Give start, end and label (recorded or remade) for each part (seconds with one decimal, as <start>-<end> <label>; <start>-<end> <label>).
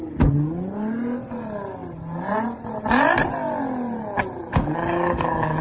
0.0-4.5 recorded; 4.5-5.6 remade